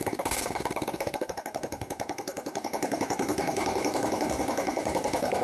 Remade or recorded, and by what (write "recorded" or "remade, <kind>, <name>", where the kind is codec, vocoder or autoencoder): remade, codec, DAC